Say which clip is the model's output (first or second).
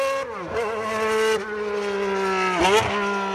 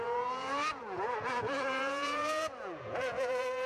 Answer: second